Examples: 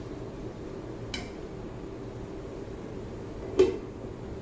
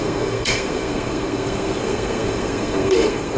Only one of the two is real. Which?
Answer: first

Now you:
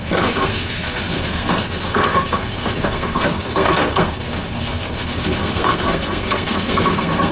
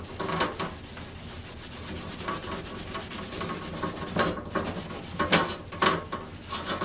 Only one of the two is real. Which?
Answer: second